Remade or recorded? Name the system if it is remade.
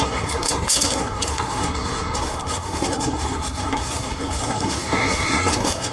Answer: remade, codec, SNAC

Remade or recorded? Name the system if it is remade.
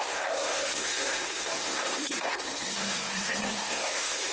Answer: remade, codec, SNAC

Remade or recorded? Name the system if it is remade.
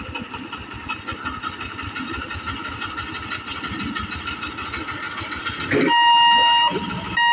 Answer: recorded